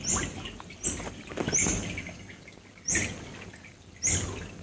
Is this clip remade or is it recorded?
recorded